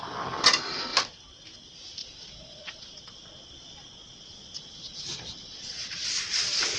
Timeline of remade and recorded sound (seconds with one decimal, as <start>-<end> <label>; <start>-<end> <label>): 0.0-2.0 recorded; 2.0-5.9 remade; 5.9-6.8 recorded